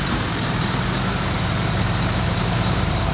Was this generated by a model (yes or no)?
yes